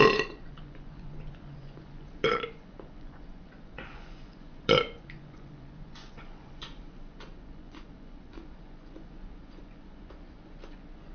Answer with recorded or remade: remade